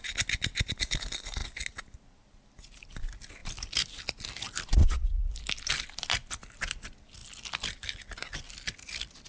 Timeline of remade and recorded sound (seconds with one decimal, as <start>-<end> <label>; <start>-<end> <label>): 0.0-4.8 recorded; 4.8-5.3 remade; 5.3-9.3 recorded